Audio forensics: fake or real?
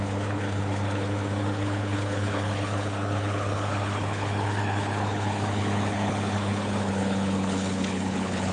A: fake